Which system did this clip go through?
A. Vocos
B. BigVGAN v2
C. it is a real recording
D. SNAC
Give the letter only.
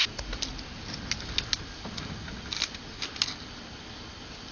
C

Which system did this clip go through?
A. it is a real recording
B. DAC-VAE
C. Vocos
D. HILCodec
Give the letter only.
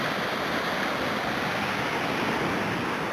A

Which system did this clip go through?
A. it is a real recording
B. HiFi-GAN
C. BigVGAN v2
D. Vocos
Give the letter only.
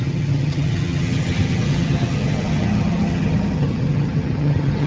B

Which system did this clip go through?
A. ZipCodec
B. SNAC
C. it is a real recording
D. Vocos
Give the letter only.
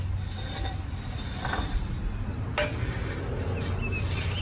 C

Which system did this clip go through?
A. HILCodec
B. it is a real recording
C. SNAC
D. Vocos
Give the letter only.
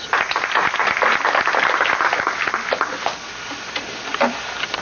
B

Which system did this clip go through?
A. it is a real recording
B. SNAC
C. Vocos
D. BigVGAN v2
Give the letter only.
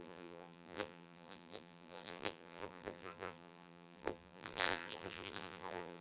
D